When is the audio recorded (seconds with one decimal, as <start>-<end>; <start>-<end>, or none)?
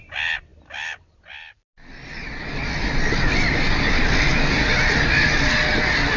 0.0-6.2